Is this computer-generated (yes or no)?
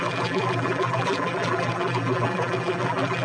yes